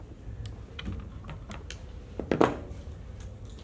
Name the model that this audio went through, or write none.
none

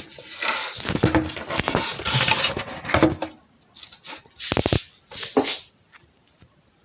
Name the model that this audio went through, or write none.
none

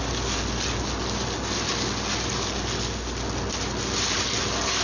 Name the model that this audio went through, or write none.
none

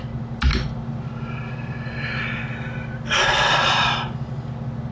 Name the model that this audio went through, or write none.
none